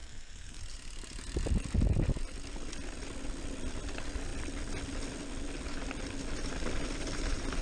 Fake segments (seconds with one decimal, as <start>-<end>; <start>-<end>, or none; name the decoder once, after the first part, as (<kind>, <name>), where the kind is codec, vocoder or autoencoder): 0.0-0.6 (codec, SNAC)